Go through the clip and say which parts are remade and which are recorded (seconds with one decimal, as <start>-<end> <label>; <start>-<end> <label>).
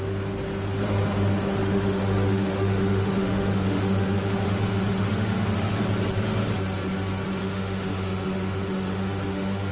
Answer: 0.0-1.6 recorded; 1.6-5.8 remade; 5.8-7.4 recorded; 7.4-9.7 remade